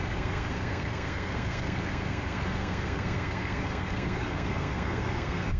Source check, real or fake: fake